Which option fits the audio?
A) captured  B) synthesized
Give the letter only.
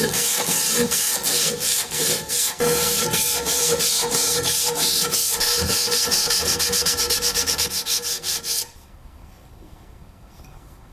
B